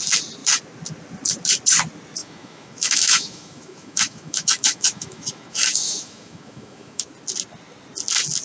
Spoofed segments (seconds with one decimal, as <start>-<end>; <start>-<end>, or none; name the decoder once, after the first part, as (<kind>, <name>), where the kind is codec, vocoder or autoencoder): 2.2-7.1 (autoencoder, DAC-VAE)